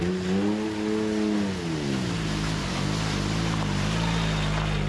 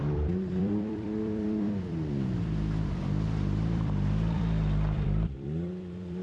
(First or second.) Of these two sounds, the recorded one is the first